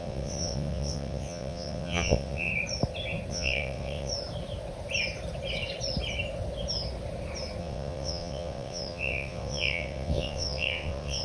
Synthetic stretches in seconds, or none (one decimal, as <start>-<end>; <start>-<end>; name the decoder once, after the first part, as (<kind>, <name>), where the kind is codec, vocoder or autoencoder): 0.0-2.5 (vocoder, WaveNeXt); 3.3-4.1; 7.6-11.2